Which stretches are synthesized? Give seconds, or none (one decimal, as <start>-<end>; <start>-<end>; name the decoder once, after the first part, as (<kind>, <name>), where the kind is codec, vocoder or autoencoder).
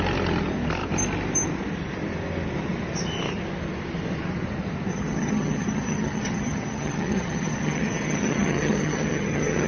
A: 4.9-9.7 (vocoder, HiFi-GAN)